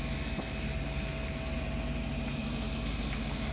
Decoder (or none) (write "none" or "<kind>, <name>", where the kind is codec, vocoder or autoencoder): none